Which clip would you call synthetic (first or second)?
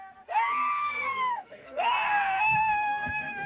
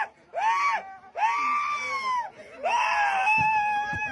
first